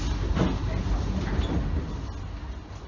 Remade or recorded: recorded